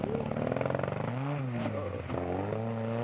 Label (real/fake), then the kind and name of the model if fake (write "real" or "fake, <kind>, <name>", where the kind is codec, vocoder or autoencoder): real